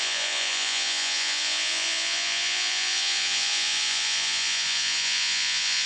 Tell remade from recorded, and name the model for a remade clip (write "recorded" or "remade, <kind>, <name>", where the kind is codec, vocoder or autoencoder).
remade, vocoder, Vocos